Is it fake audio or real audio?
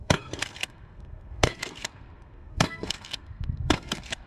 fake